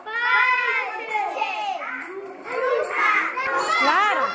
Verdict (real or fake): real